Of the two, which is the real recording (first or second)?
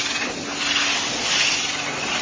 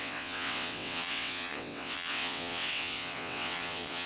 first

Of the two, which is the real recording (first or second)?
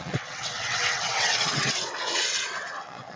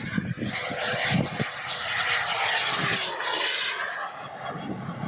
second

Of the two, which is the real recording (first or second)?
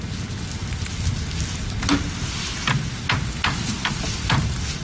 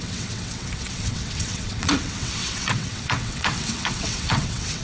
first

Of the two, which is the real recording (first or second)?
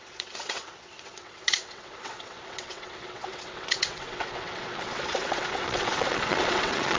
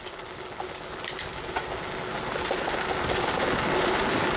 second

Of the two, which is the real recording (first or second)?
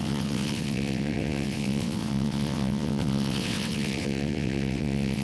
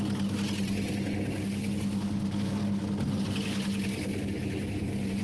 second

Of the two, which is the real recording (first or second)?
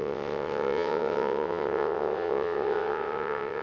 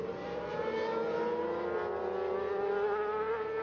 second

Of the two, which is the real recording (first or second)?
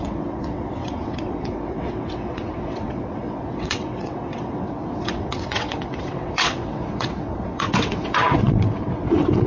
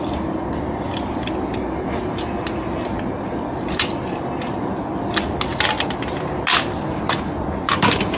second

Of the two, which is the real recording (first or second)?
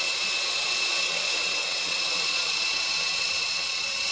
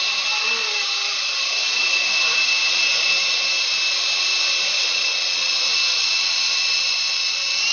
second